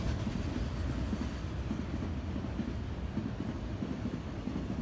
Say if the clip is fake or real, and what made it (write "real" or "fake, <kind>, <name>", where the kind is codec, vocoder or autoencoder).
real